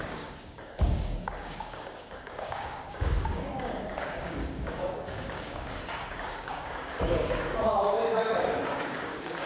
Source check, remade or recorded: remade